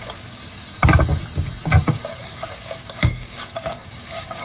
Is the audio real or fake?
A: fake